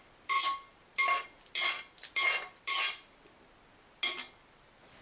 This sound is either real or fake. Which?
real